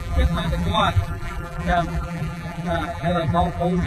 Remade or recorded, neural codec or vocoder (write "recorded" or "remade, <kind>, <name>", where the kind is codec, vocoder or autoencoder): remade, vocoder, BigVGAN v2